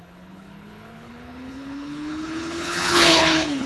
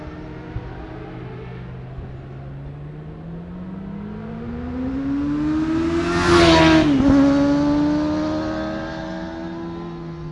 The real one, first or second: second